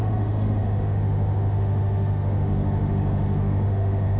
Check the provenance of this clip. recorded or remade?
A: remade